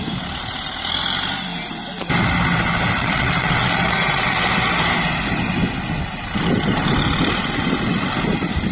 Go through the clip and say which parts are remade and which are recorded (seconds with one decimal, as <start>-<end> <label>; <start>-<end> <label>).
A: 0.0-3.0 recorded; 3.0-4.5 remade; 4.5-8.7 recorded